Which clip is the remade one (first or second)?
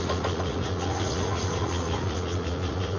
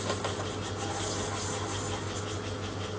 first